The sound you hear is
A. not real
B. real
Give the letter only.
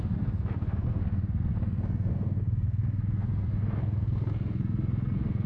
A